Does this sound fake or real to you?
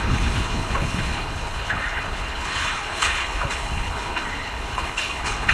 fake